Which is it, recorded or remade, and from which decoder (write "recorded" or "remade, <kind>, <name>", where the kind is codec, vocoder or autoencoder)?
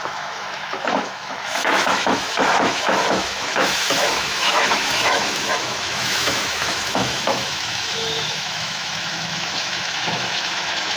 remade, autoencoder, DAC-VAE